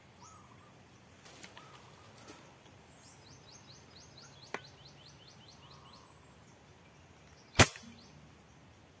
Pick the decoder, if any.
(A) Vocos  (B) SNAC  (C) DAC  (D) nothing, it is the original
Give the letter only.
D